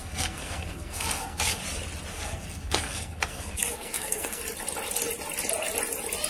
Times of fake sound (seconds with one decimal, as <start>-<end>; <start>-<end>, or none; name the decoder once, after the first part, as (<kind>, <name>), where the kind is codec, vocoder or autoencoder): 0.0-1.6 (codec, SNAC); 2.1-4.4